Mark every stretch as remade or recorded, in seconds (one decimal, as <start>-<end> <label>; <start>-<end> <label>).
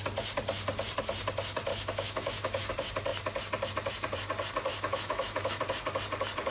0.0-1.7 recorded; 1.7-2.7 remade; 2.7-4.7 recorded; 4.7-5.6 remade; 5.6-6.5 recorded